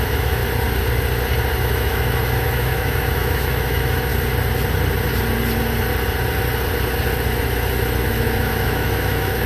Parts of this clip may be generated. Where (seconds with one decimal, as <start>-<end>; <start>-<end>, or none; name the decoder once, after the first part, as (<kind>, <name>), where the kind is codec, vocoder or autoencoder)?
0.0-0.4 (autoencoder, DAC-VAE); 1.6-4.1; 8.0-9.5